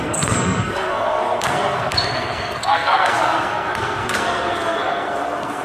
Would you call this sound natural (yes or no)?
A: no